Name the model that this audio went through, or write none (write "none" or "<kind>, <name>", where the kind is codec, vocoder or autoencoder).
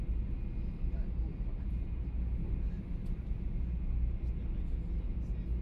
none